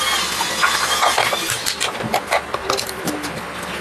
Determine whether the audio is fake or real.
real